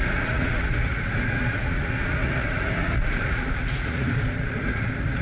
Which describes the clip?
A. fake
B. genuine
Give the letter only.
A